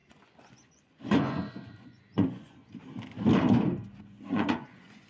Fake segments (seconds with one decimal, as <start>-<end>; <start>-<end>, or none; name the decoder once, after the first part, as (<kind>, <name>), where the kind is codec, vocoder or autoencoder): 0.0-2.6 (vocoder, Vocos); 4.0-5.1

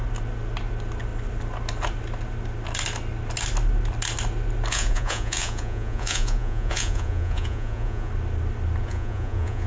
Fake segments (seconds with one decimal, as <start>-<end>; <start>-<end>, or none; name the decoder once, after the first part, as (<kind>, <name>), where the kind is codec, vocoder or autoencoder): 4.7-8.1 (vocoder, Vocos); 8.8-9.7

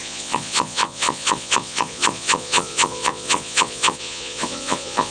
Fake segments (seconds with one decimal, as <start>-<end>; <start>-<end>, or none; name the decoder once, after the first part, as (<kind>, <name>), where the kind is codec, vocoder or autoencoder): 0.0-5.1 (vocoder, Vocos)

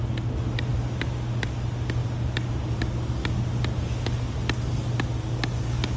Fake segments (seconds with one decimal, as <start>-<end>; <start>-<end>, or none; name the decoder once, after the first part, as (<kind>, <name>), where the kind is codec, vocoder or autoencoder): none

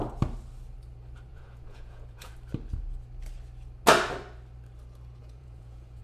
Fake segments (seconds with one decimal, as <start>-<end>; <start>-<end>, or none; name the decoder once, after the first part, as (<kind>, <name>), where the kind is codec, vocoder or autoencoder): 1.3-2.3 (vocoder, Vocos); 5.2-6.0

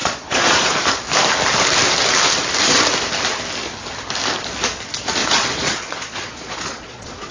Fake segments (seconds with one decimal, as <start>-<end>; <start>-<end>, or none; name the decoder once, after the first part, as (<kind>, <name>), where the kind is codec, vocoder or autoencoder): 0.0-0.9 (vocoder, Vocos); 5.2-7.3

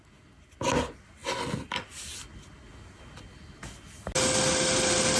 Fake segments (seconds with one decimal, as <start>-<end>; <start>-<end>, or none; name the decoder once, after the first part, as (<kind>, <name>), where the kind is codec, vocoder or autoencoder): none

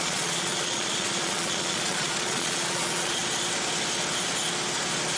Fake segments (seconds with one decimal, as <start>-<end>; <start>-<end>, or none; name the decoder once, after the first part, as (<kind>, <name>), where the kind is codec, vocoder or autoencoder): 0.0-3.2 (vocoder, Vocos)